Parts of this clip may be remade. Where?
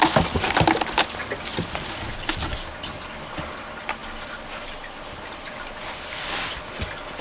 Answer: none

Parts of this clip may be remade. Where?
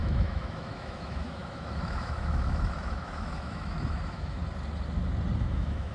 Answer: 0.0-4.4 (autoencoder, DAC-VAE); 5.4-5.9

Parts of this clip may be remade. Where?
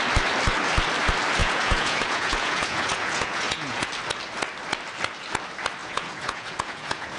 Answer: 1.4-3.9 (vocoder, Vocos); 5.8-7.2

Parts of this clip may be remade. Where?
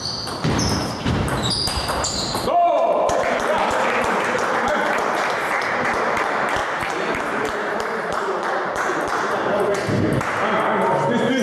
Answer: 0.0-6.6 (vocoder, BigVGAN v2); 7.2-11.4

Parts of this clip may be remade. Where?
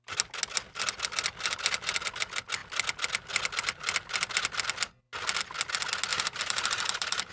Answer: 6.1-7.3 (vocoder, BigVGAN v2)